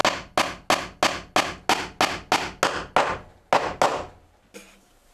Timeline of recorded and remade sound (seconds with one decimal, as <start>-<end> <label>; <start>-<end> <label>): 0.0-5.1 recorded